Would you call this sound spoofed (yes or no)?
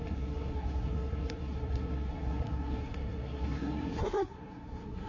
yes